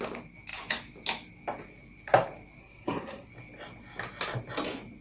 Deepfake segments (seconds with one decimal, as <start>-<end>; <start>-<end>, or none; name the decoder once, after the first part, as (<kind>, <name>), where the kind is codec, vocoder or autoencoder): 2.6-3.3 (codec, SNAC)